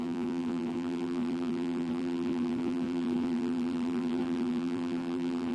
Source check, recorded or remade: remade